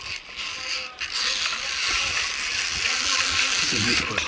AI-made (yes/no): no